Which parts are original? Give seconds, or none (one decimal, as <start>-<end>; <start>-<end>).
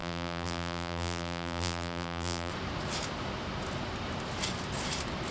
2.5-5.3